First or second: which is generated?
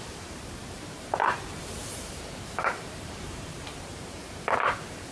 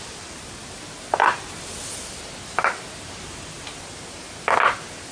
first